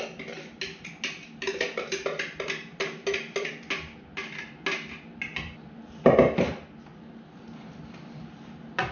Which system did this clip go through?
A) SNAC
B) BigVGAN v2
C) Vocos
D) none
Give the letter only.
D